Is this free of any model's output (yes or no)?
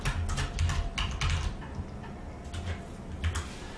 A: yes